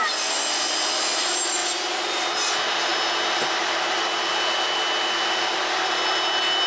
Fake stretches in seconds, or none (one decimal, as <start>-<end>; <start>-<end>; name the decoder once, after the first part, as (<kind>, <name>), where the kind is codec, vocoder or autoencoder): none